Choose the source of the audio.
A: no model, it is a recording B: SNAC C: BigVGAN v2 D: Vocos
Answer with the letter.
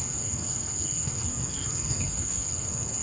B